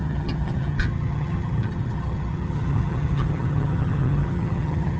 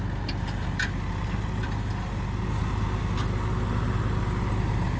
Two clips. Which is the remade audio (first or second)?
first